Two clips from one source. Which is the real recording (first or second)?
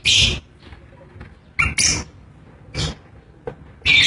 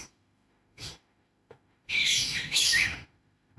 first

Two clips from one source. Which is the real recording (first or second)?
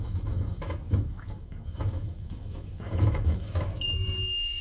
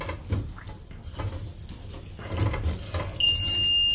second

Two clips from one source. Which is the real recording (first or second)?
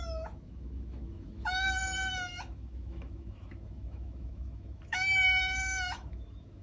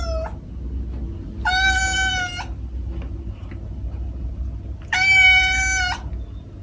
second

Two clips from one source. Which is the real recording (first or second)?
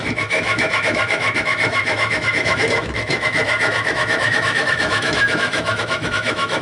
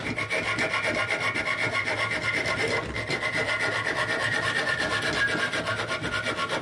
second